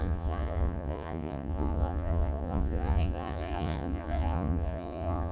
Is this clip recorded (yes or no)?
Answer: no